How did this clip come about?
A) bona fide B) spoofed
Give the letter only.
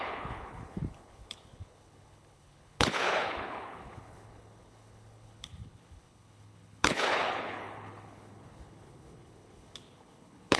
B